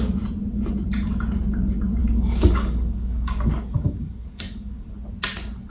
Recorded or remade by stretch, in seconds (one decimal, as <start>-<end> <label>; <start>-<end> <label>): 0.0-2.0 recorded; 2.0-4.9 remade; 4.9-5.7 recorded